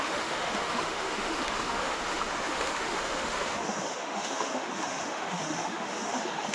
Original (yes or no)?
no